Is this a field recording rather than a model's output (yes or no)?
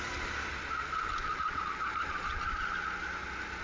yes